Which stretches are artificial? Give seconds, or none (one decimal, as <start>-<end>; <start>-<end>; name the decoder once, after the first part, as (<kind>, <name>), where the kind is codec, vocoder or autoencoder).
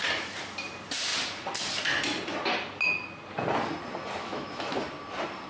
4.2-4.8 (autoencoder, DAC-VAE)